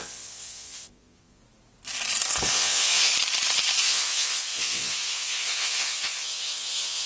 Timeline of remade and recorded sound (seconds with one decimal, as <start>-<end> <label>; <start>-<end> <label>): 0.0-1.4 remade; 1.4-2.5 recorded; 2.5-3.1 remade; 3.1-3.8 recorded; 3.8-7.1 remade